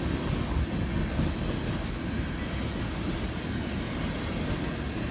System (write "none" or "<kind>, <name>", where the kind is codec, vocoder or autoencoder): none